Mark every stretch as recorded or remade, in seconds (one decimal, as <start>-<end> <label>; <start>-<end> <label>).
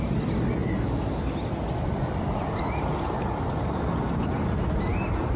0.0-5.4 recorded